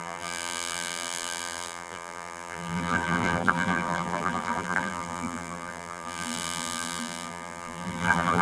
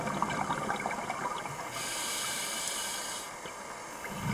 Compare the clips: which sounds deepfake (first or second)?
first